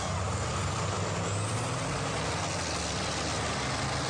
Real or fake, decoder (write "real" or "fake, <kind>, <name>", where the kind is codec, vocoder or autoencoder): real